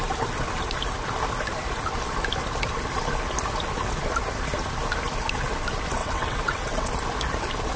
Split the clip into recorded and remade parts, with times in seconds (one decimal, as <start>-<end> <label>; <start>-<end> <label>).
0.0-6.0 recorded; 6.0-6.9 remade; 6.9-7.8 recorded